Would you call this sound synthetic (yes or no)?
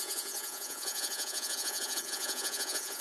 yes